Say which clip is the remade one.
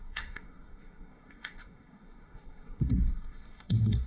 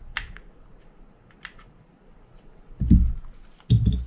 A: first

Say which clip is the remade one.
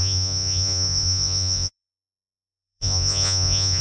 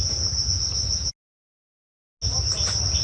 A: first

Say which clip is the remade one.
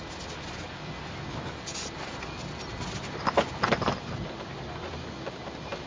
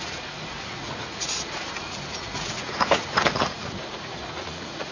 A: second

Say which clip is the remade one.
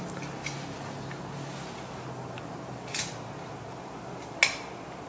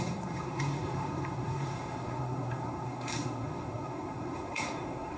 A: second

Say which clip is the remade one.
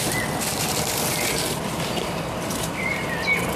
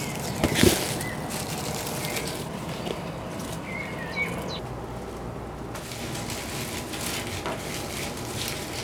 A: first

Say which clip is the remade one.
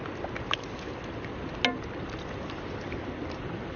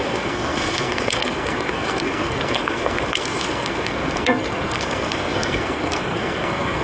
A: second